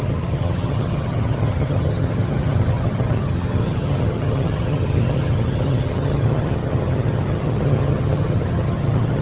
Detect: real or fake fake